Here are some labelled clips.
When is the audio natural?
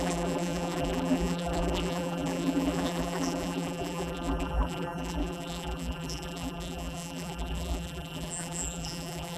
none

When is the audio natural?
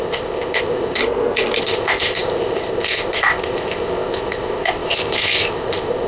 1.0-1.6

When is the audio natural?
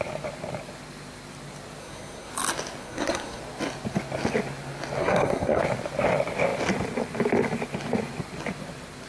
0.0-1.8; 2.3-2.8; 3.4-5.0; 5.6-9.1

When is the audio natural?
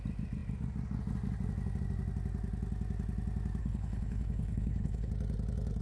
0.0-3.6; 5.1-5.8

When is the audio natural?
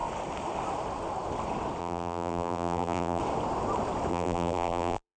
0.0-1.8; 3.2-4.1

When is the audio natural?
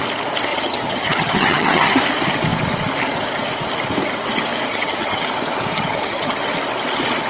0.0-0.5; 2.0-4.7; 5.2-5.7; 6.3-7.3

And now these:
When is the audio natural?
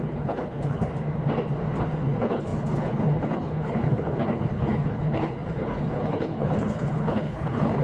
0.9-1.8